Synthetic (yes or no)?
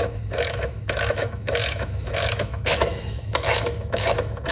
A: yes